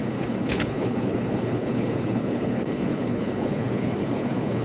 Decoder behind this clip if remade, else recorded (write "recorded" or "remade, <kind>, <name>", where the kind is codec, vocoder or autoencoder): remade, codec, HILCodec